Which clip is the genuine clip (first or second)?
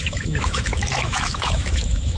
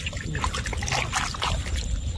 second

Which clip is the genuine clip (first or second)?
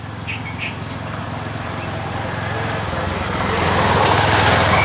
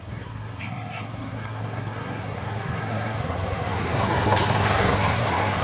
first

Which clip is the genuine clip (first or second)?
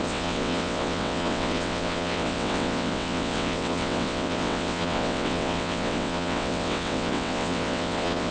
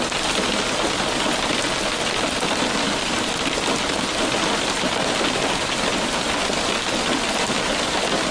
second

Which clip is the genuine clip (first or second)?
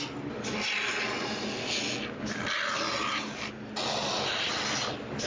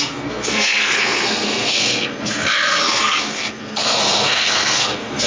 first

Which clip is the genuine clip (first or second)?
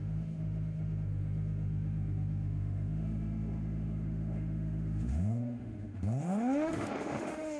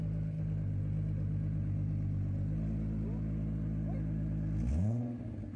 second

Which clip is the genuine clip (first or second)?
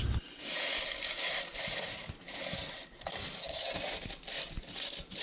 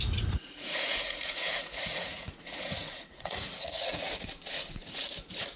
first